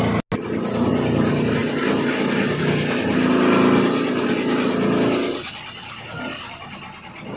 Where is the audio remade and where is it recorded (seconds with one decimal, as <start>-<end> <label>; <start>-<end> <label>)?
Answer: 0.0-7.4 recorded